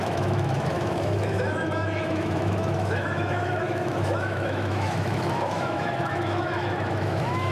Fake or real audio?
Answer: fake